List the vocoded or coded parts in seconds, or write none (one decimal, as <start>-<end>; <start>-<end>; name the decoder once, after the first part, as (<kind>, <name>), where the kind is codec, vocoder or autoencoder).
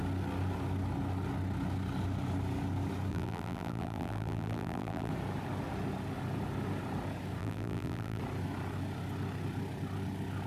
3.1-5.1 (vocoder, BigVGAN v2); 7.4-8.2